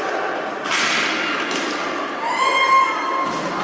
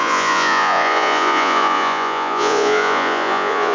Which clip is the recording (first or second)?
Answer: first